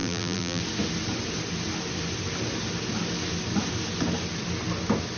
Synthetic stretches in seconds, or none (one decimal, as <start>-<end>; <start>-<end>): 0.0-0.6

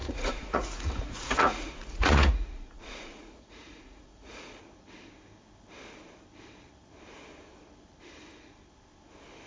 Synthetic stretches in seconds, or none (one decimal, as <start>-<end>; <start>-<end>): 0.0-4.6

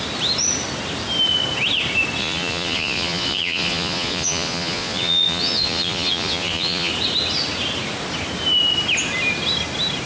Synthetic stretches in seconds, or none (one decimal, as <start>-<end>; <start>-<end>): 2.2-6.9

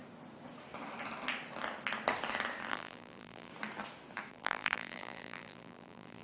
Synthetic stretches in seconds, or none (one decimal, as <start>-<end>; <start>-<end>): 2.7-3.5; 4.3-6.2